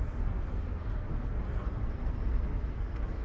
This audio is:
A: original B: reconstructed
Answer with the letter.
B